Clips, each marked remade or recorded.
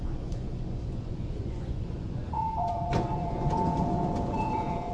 remade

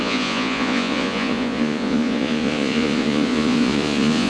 remade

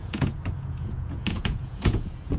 remade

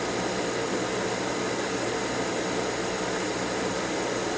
recorded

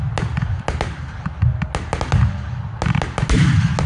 recorded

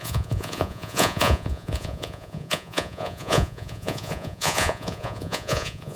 remade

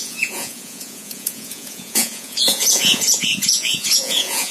remade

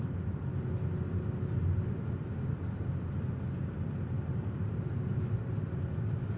recorded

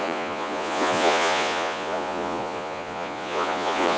remade